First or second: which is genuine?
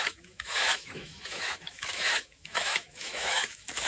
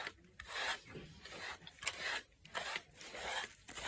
second